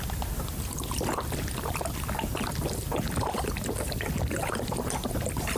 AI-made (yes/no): no